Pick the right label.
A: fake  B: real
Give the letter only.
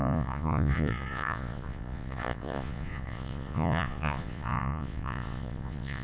A